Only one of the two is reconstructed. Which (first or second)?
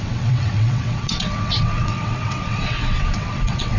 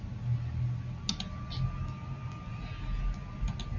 first